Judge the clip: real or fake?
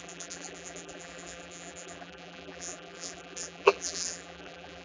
fake